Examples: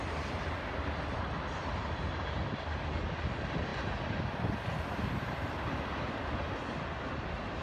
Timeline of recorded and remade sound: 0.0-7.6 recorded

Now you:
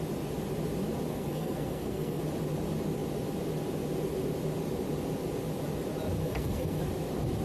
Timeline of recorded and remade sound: 0.0-1.1 recorded; 1.1-2.2 remade; 2.2-6.2 recorded; 6.2-6.8 remade; 6.8-7.4 recorded

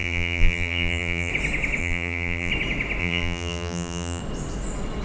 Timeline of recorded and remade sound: 0.0-1.3 remade; 1.3-1.8 recorded; 1.8-2.5 remade; 2.5-3.0 recorded; 3.0-4.2 remade; 4.2-5.0 recorded

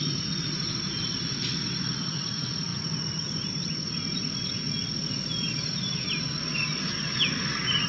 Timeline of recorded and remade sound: 0.0-7.9 recorded

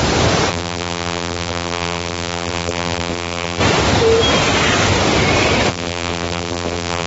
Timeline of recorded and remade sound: 0.0-0.5 recorded; 0.5-3.6 remade; 3.6-5.7 recorded; 5.7-7.1 remade

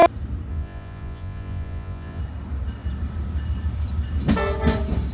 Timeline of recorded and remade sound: 0.0-0.5 recorded; 0.5-2.2 remade; 2.2-5.1 recorded

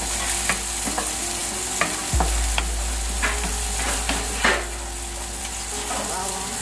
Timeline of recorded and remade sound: 0.0-6.6 recorded